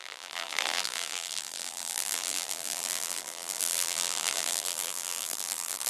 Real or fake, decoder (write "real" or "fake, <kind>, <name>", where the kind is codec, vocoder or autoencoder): fake, vocoder, BigVGAN v2